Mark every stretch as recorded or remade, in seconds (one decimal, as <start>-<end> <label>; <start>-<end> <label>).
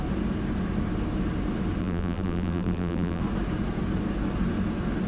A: 0.0-1.8 recorded; 1.8-3.2 remade; 3.2-5.1 recorded